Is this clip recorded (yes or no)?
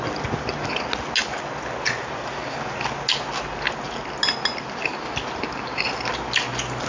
yes